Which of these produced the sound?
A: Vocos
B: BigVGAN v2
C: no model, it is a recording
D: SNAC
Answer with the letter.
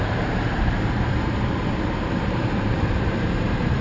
B